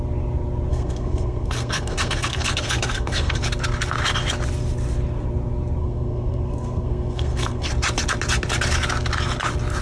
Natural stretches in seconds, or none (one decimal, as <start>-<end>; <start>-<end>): 0.0-0.7; 3.4-5.8; 7.7-9.8